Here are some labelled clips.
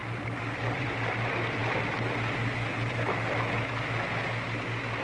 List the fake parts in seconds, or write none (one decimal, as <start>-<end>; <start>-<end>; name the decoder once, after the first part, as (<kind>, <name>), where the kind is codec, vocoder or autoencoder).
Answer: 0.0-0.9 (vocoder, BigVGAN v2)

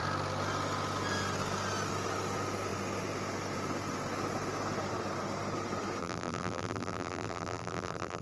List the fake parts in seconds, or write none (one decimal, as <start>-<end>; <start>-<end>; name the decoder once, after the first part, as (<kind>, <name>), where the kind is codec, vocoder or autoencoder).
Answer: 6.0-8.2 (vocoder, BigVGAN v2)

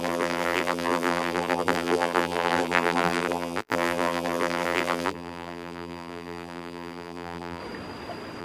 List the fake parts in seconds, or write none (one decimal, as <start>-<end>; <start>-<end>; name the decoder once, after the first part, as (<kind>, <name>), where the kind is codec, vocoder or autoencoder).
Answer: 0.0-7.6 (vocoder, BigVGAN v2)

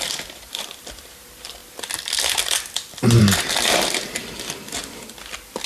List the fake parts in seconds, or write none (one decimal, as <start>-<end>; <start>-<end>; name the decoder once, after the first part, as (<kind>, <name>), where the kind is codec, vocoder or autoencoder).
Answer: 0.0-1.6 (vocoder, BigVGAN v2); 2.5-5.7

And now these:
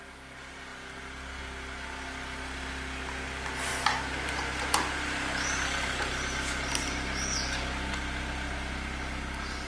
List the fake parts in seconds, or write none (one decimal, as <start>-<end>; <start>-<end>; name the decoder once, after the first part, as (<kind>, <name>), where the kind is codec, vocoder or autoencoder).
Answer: 3.7-6.7 (vocoder, BigVGAN v2)

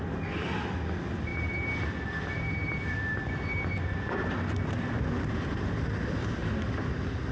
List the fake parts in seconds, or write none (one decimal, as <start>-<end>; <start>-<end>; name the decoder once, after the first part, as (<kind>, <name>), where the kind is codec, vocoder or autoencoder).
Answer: 1.3-4.7 (vocoder, BigVGAN v2)

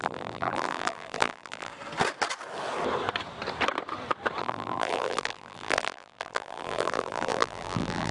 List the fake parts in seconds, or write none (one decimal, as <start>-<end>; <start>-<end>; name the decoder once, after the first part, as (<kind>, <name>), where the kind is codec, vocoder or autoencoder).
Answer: 0.0-1.7 (vocoder, BigVGAN v2); 4.4-8.1